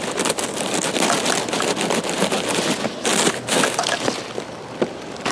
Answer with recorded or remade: recorded